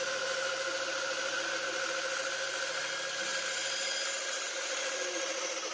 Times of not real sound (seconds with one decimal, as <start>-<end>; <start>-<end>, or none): none